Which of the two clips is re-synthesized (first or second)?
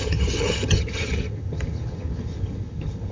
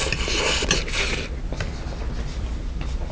first